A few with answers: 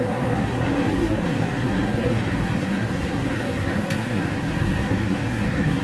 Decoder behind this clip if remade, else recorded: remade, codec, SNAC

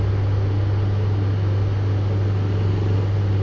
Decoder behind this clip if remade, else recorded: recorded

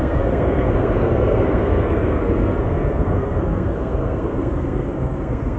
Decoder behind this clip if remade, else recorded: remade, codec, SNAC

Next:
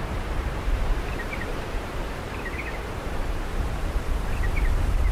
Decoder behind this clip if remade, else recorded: remade, vocoder, BigVGAN v2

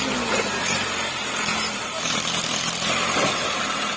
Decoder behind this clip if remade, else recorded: recorded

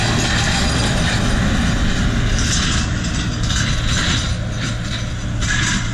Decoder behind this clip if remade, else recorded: recorded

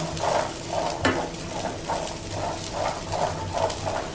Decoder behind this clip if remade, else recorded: recorded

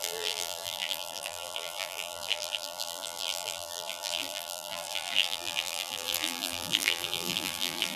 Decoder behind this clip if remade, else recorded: remade, vocoder, BigVGAN v2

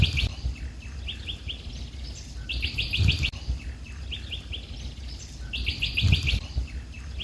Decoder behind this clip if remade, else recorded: recorded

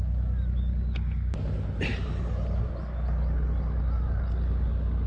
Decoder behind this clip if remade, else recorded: recorded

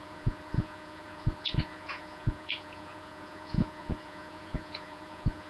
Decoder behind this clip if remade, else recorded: remade, vocoder, Vocos